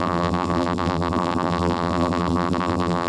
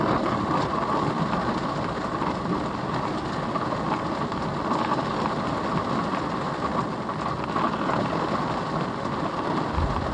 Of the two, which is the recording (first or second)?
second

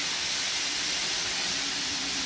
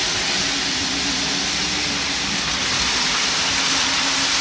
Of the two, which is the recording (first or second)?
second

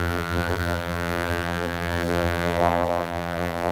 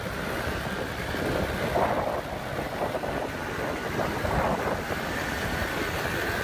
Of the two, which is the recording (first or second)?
second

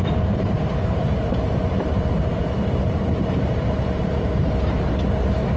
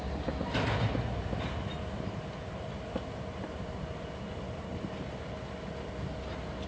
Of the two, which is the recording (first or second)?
second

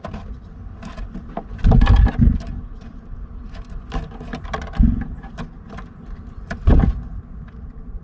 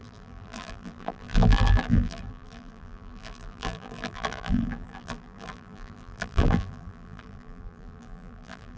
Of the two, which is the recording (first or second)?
first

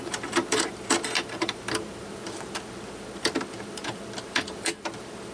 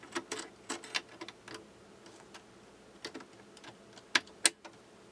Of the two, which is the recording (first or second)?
second